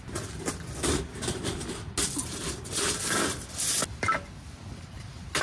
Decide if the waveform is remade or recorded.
recorded